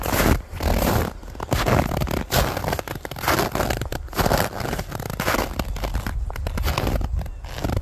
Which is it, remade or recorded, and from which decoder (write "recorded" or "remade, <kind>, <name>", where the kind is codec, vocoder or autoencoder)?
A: recorded